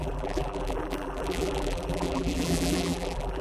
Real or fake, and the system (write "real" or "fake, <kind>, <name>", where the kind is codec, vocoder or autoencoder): fake, vocoder, BigVGAN v2